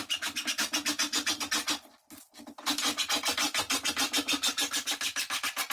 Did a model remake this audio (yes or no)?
no